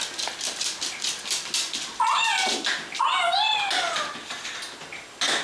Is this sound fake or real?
real